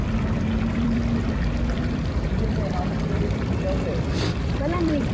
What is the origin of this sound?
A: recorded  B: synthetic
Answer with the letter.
B